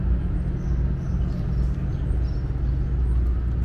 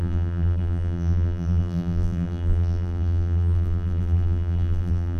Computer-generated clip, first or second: second